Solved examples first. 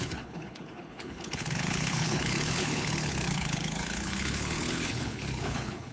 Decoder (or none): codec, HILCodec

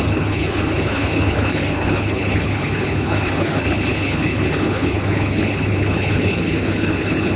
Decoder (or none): codec, HILCodec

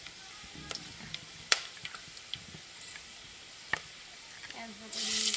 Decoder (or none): none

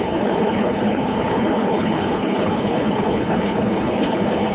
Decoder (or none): codec, HILCodec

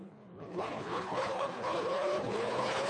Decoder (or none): codec, HILCodec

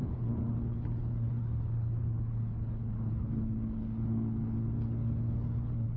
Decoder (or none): codec, HILCodec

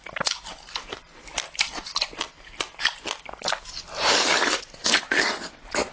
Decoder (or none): none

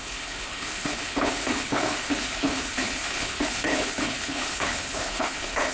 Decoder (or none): codec, HILCodec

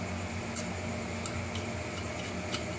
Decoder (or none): none